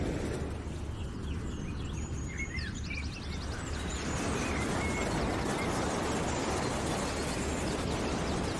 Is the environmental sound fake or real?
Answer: real